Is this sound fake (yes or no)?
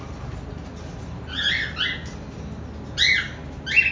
no